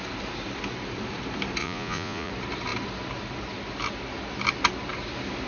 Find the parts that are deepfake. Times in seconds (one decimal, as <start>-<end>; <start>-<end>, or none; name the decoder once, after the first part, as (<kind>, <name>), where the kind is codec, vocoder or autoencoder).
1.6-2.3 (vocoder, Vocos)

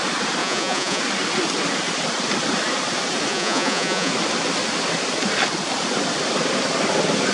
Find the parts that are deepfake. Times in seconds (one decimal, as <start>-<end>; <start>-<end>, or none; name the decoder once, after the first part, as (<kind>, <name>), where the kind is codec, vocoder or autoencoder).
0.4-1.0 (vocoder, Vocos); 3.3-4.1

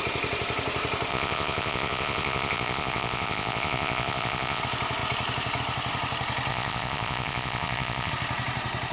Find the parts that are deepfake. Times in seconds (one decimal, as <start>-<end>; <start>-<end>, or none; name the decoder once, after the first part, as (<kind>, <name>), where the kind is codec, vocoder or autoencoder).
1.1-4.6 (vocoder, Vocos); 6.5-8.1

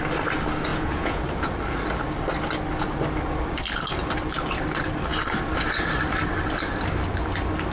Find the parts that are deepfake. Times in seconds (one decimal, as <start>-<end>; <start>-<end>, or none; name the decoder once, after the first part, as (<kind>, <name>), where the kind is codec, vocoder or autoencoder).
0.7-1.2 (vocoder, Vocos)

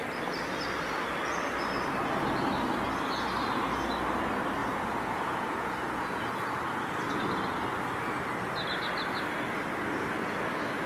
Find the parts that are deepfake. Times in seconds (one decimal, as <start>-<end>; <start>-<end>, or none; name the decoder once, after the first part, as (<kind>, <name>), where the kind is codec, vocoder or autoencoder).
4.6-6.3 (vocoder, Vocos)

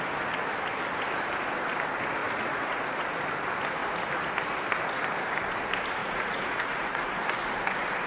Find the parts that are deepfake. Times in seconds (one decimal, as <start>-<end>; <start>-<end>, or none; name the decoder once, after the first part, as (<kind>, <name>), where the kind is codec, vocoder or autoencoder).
2.2-2.8 (vocoder, Vocos); 6.0-7.0